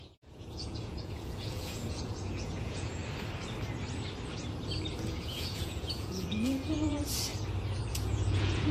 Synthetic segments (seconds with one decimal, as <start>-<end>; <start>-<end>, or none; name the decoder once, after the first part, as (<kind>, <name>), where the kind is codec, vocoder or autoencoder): 0.0-3.0 (vocoder, Vocos); 5.0-7.3; 7.9-8.7